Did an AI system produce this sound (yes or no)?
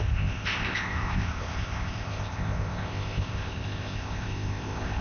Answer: yes